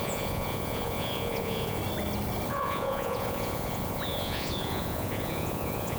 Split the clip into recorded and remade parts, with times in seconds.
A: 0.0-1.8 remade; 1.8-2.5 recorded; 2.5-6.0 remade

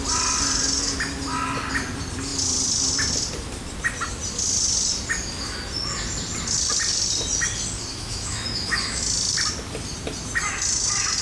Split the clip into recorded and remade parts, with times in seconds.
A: 0.0-7.9 recorded; 7.9-9.0 remade; 9.0-11.2 recorded

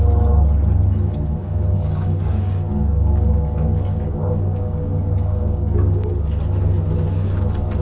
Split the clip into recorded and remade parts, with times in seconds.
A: 0.0-1.4 recorded; 1.4-6.1 remade; 6.1-7.8 recorded

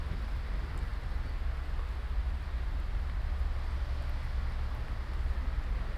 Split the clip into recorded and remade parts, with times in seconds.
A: 0.0-6.0 recorded

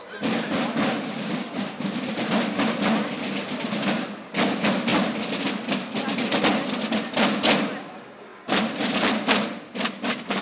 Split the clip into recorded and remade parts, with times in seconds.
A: 0.0-8.3 recorded; 8.3-9.0 remade; 9.0-10.4 recorded